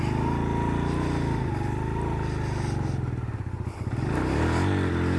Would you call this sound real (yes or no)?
yes